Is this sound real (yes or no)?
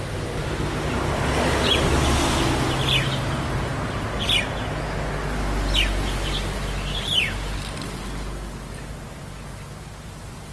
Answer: yes